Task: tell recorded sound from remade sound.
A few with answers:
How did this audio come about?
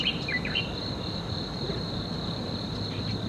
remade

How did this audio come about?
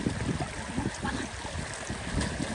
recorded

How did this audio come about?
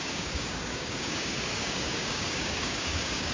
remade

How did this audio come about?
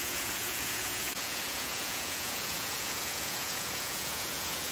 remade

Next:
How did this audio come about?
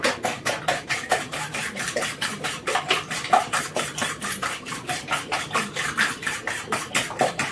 remade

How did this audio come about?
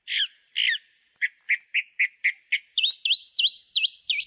recorded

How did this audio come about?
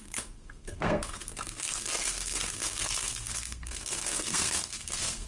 remade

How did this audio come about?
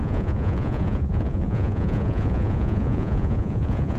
remade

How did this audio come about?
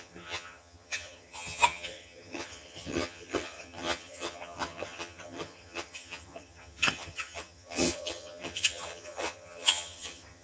remade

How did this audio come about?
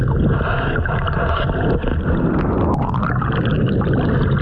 recorded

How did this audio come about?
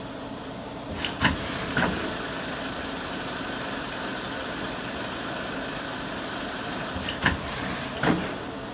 remade